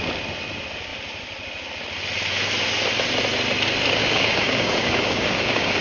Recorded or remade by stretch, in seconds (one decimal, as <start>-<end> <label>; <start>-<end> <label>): 0.0-4.0 recorded; 4.0-5.8 remade